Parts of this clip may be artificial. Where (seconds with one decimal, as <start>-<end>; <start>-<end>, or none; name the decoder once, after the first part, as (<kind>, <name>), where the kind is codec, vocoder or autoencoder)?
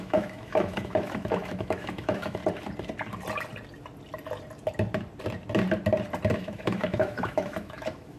0.0-2.4 (autoencoder, DAC-VAE); 6.3-8.2